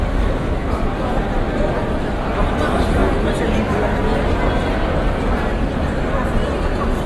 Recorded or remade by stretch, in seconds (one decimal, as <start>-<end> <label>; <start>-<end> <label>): 0.0-7.1 recorded